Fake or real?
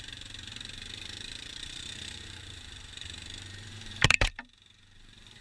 fake